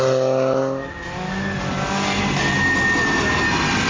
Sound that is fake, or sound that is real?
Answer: real